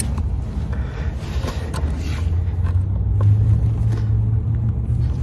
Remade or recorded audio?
recorded